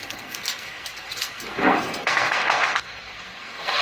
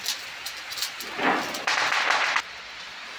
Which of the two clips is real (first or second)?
second